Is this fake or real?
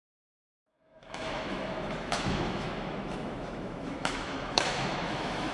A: fake